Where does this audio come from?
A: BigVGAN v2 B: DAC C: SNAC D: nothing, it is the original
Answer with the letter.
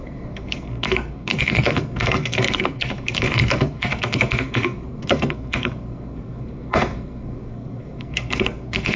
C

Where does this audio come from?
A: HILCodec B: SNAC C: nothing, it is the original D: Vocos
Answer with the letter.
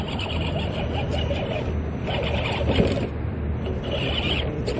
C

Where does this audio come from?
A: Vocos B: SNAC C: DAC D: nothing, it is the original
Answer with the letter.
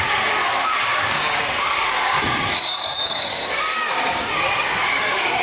C